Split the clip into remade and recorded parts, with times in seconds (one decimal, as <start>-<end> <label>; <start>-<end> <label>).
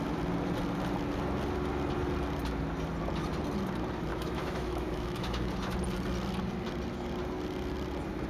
0.0-4.1 recorded; 4.1-5.5 remade; 5.5-8.3 recorded